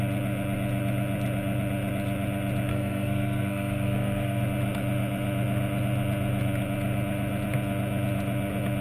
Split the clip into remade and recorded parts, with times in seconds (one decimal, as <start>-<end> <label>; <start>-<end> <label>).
0.0-2.7 recorded; 2.7-4.4 remade; 4.4-8.8 recorded